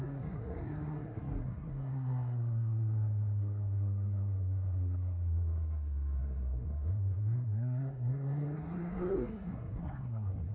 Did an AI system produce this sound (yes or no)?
yes